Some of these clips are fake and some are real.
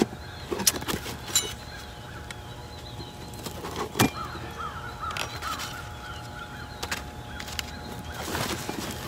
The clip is real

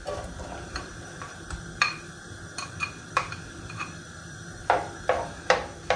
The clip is fake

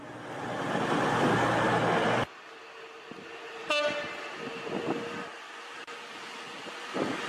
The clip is real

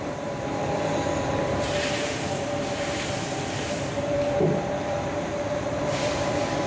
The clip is fake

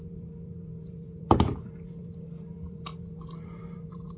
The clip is fake